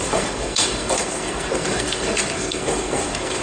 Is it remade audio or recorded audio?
remade